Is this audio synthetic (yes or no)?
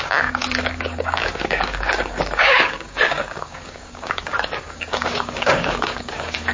yes